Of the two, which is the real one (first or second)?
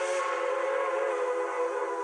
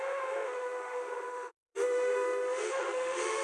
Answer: first